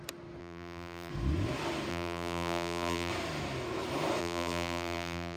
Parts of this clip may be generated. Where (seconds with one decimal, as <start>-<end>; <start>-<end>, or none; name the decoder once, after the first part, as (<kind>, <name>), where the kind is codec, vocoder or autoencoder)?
0.4-1.1 (vocoder, BigVGAN v2); 1.9-3.1; 4.2-5.4